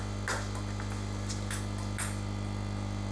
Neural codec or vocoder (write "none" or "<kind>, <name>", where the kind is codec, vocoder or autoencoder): none